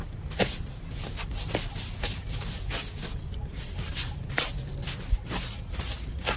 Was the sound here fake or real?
real